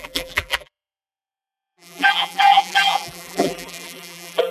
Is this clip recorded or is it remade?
remade